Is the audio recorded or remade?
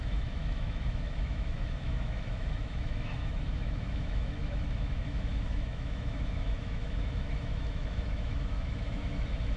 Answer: remade